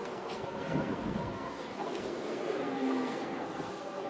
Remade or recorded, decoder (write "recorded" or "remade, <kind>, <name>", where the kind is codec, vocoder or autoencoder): remade, codec, SNAC